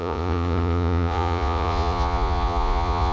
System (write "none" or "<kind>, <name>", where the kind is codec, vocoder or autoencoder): vocoder, Vocos